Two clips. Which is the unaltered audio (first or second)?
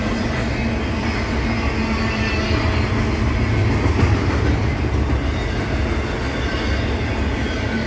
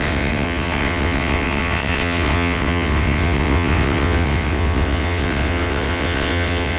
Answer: first